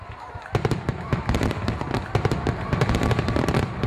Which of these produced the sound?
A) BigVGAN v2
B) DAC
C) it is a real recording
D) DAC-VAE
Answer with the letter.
C